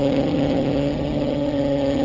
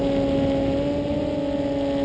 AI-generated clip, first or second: first